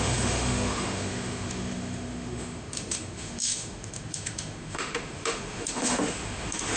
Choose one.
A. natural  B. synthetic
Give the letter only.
B